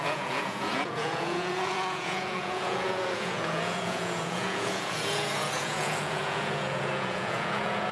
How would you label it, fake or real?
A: fake